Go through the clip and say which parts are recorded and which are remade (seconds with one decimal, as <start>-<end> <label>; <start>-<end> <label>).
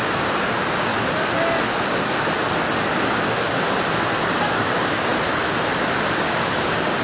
0.0-0.9 remade; 0.9-4.3 recorded; 4.3-5.1 remade; 5.1-6.3 recorded; 6.3-7.0 remade